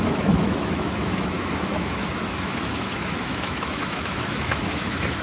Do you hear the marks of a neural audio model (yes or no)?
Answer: yes